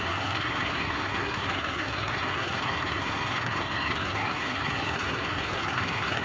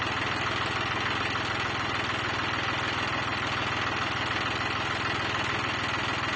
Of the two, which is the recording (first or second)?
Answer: second